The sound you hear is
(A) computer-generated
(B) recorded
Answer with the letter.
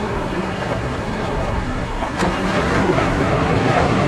A